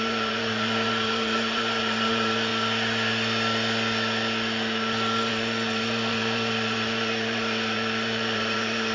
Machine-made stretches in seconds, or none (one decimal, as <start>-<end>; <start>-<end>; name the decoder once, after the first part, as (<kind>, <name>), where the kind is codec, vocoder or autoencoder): 0.0-2.5 (vocoder, BigVGAN v2); 5.3-8.9